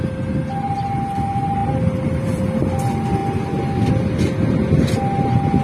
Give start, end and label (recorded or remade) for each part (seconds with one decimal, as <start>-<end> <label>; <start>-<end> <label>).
0.0-1.6 recorded; 1.6-2.4 remade; 2.4-5.6 recorded